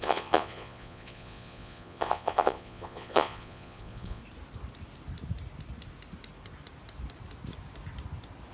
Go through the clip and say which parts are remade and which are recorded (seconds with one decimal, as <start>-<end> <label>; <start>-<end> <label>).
0.0-4.2 remade; 4.2-8.5 recorded